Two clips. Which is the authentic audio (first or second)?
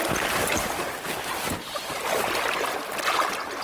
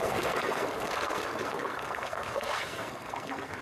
first